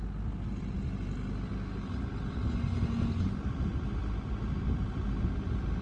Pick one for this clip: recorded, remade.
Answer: recorded